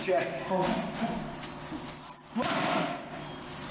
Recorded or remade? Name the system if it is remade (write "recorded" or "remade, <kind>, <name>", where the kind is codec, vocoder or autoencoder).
recorded